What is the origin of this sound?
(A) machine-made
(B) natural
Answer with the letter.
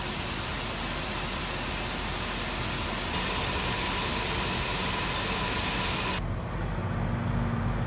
B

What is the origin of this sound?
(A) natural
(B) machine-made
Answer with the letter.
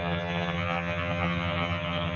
B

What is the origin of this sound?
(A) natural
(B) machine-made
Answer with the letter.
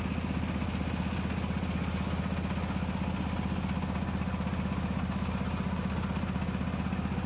A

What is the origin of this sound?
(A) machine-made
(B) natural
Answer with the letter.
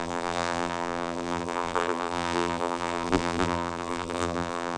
A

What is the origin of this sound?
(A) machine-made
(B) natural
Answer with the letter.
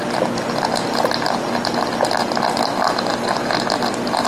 B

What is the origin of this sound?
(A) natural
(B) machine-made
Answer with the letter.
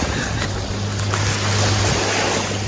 A